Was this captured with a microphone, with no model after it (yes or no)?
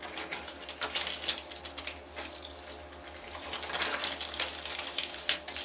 yes